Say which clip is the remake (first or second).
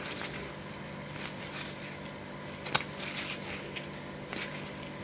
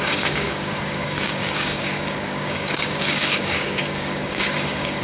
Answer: second